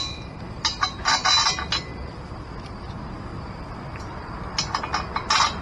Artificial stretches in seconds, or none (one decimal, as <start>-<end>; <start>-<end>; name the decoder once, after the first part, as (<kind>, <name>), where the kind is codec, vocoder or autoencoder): none